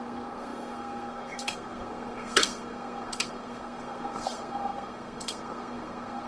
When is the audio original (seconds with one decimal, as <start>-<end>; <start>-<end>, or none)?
none